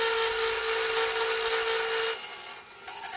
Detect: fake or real real